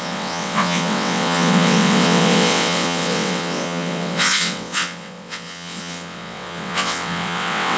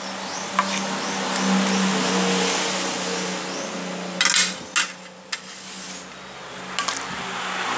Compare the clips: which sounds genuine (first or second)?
second